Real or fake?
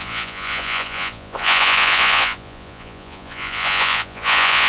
fake